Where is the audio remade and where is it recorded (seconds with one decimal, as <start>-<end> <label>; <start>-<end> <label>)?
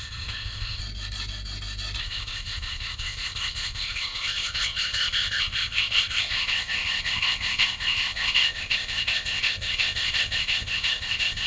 0.0-0.8 remade; 0.8-2.0 recorded; 2.0-11.5 remade